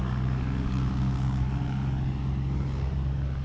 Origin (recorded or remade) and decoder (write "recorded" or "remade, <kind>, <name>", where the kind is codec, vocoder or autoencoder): remade, codec, DAC